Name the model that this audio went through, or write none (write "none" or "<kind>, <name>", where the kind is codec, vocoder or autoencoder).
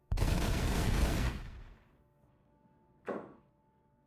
codec, SNAC